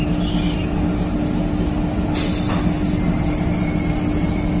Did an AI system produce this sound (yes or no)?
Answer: no